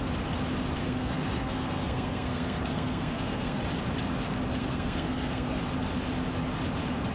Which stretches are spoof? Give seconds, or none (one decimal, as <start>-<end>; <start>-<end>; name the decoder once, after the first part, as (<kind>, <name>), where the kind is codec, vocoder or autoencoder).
0.8-3.6 (codec, SNAC); 4.6-5.6